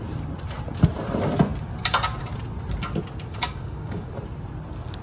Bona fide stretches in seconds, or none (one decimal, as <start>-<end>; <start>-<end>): 0.0-3.3; 4.1-5.0